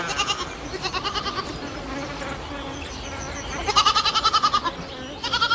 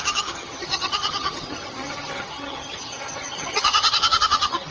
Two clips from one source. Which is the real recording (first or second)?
first